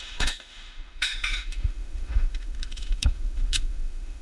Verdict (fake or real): fake